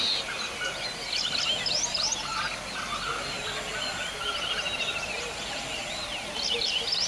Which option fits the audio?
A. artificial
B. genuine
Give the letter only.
B